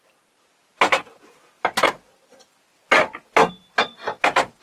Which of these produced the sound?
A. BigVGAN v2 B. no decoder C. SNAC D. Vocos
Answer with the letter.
B